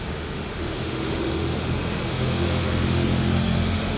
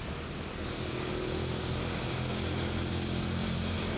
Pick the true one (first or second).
second